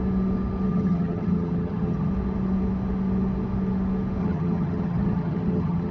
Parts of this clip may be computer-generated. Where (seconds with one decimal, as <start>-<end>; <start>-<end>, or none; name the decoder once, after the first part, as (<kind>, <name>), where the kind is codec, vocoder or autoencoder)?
0.7-2.1 (vocoder, HiFi-GAN); 4.2-5.9